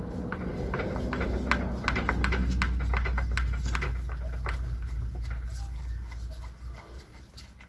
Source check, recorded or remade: recorded